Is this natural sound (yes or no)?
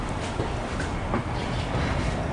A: yes